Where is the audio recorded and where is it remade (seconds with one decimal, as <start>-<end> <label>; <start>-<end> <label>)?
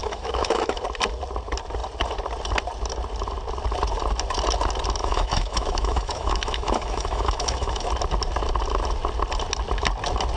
0.0-0.8 remade; 0.8-5.0 recorded; 5.0-7.9 remade; 7.9-10.4 recorded